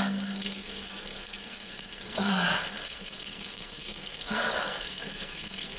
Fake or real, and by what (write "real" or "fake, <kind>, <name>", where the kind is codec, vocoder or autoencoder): fake, codec, SNAC